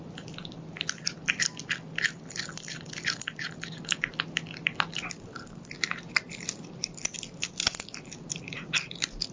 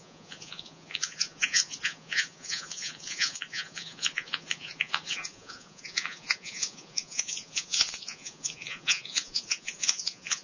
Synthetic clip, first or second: second